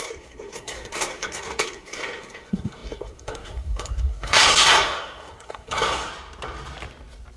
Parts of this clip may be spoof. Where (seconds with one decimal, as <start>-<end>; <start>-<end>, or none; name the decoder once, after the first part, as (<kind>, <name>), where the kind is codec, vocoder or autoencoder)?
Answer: 0.0-6.1 (codec, SNAC)